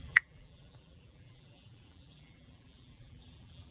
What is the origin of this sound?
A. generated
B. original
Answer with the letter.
A